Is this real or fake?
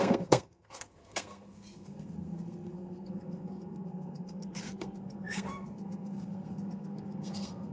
fake